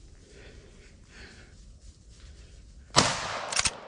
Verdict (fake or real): real